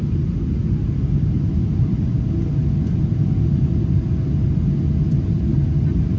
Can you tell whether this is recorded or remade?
recorded